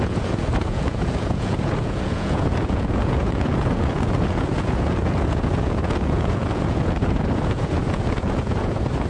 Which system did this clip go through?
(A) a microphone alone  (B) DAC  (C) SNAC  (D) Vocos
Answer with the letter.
D